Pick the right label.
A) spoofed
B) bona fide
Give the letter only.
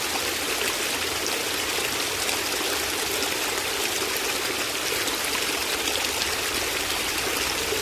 B